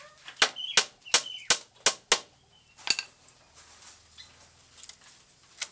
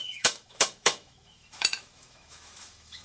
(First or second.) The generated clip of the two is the second